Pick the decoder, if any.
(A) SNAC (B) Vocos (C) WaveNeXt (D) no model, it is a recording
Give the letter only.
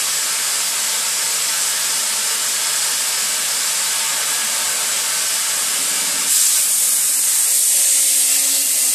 D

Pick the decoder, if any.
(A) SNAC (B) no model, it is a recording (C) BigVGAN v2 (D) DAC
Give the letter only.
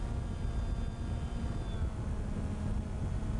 B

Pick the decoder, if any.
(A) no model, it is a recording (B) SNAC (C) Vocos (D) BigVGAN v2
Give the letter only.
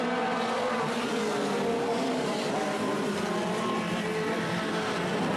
D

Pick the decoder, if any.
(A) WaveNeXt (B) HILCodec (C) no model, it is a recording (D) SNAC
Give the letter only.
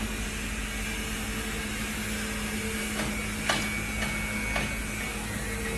C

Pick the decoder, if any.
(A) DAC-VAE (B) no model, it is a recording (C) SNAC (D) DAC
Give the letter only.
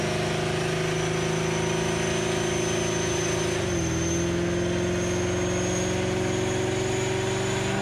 B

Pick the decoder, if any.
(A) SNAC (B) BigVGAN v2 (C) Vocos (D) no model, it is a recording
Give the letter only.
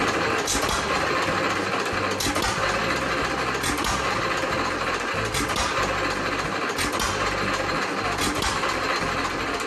D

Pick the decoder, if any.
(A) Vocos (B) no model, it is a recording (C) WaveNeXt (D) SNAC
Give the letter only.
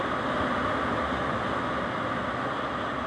B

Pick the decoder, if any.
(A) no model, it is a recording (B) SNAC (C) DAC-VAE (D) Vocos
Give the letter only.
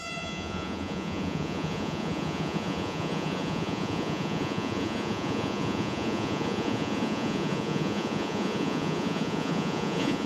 D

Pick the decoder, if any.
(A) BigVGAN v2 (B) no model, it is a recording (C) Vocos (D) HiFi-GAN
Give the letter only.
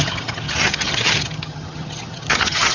D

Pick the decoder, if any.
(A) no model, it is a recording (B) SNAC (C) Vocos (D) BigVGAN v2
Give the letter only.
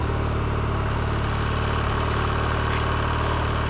A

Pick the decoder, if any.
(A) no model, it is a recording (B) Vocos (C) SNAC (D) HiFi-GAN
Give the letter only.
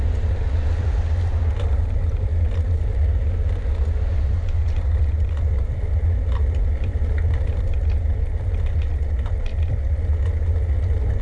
A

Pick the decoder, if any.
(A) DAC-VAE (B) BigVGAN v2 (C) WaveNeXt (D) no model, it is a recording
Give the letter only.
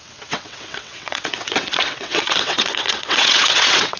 C